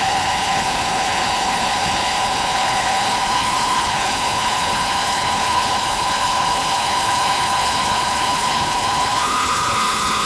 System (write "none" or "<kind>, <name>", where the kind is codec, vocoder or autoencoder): codec, HILCodec